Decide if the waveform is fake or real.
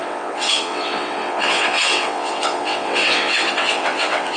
fake